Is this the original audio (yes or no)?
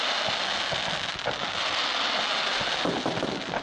yes